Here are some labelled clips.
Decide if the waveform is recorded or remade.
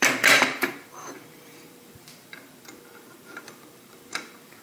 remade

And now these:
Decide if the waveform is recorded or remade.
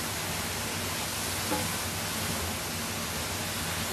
recorded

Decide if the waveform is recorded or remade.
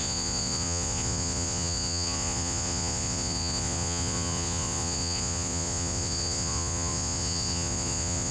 remade